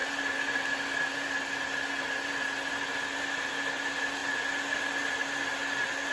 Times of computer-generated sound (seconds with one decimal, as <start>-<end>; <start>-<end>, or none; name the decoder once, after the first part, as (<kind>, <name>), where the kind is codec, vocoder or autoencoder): none